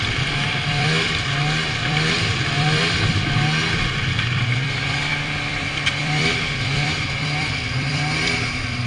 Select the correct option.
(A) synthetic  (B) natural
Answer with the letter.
A